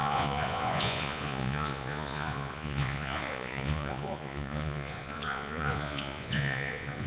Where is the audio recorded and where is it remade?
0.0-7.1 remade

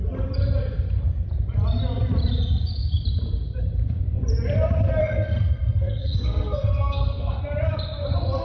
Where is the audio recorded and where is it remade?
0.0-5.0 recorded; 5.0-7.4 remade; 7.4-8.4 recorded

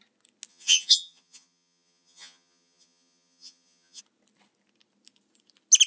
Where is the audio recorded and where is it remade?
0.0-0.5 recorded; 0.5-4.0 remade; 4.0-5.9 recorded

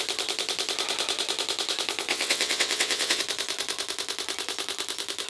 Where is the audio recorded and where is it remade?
0.0-2.1 recorded; 2.1-3.2 remade; 3.2-5.3 recorded